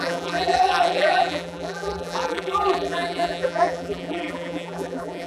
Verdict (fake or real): fake